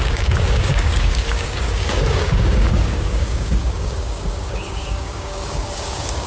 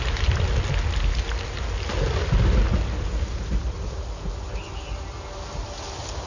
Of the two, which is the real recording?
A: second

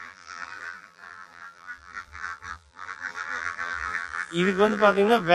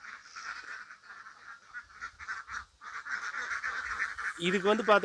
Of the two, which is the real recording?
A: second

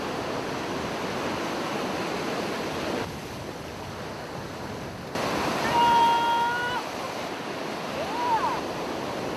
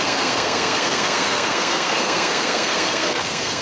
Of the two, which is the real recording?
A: first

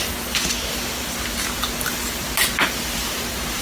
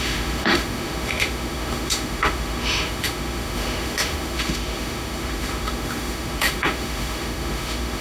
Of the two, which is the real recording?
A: first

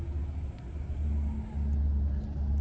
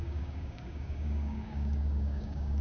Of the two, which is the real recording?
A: first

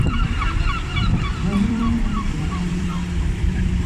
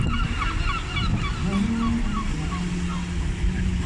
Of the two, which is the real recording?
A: second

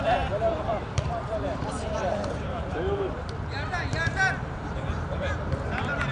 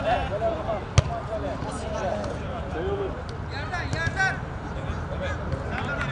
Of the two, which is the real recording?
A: second